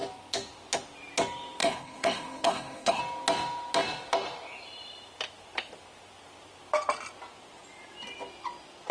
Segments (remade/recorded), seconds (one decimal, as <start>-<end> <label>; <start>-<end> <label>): 0.0-1.6 recorded; 1.6-3.0 remade; 3.0-8.9 recorded